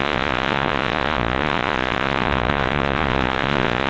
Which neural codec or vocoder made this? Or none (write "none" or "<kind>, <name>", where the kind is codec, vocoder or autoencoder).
vocoder, Vocos